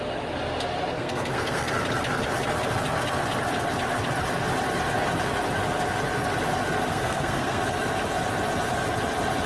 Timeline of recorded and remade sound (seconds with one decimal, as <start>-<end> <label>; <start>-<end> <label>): 0.0-1.0 recorded; 1.0-1.7 remade; 1.7-6.9 recorded; 6.9-7.6 remade; 7.6-9.5 recorded